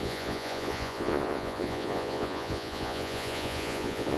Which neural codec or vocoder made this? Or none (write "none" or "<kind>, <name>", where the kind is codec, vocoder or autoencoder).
vocoder, Vocos